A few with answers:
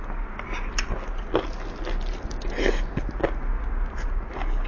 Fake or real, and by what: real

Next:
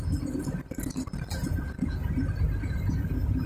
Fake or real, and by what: real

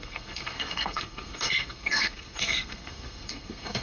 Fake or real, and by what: fake, codec, SNAC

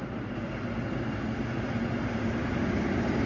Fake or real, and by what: real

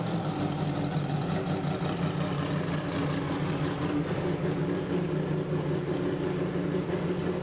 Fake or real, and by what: real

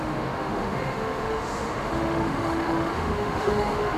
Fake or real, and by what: fake, autoencoder, DAC-VAE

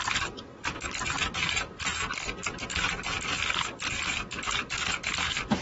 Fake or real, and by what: real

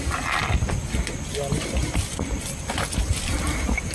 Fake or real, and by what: real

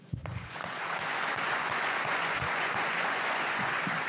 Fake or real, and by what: fake, vocoder, Vocos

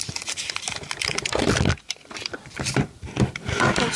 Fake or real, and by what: real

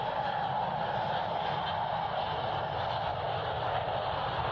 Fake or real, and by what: real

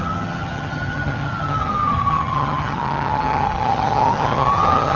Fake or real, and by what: fake, vocoder, HiFi-GAN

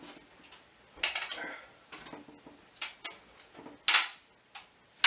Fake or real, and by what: real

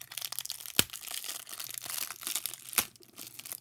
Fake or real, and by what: real